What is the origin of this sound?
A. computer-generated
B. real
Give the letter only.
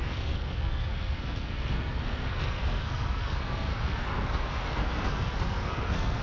A